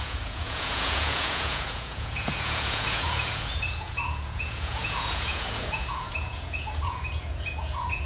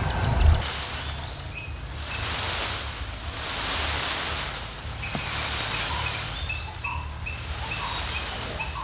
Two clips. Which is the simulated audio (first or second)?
first